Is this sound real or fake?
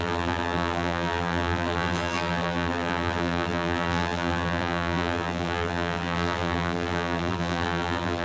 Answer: fake